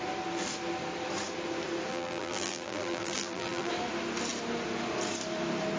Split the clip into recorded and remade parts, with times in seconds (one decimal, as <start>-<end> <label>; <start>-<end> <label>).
0.0-1.9 recorded; 1.9-3.7 remade; 3.7-5.8 recorded